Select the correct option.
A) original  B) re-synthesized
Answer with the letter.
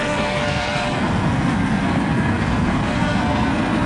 B